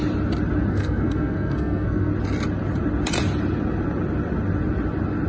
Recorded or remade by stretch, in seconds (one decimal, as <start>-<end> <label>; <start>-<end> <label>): 0.0-0.7 recorded; 0.7-2.1 remade; 2.1-5.3 recorded